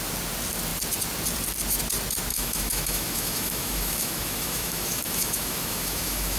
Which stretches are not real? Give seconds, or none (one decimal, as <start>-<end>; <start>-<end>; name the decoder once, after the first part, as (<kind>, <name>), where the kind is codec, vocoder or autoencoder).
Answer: 2.3-6.4 (autoencoder, DAC-VAE)